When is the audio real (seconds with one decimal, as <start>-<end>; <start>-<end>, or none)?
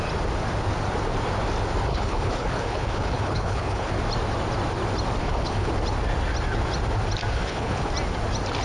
0.0-1.9; 3.9-5.2; 5.7-7.3; 7.9-8.6